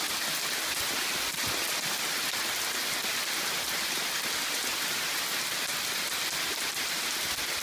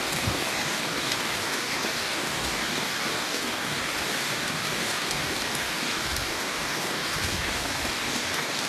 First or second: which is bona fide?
first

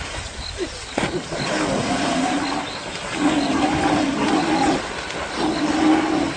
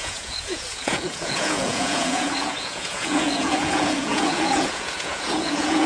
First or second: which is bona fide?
first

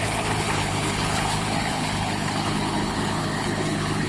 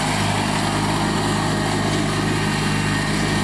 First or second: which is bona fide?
second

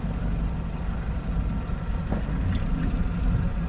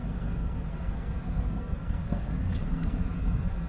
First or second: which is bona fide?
first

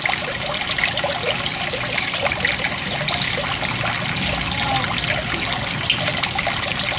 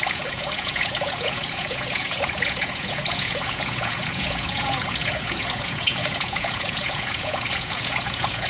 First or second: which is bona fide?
first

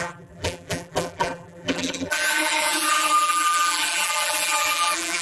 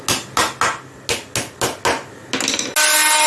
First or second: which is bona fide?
second